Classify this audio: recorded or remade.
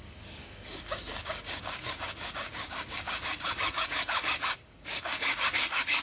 remade